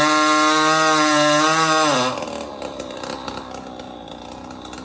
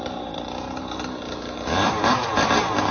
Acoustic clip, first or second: first